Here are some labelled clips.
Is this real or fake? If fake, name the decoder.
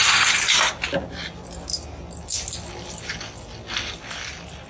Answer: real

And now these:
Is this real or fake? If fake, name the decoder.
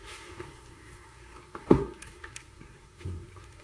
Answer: fake, codec, SNAC